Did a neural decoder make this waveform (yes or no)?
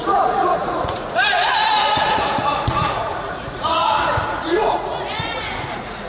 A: yes